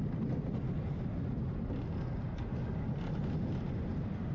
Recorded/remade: recorded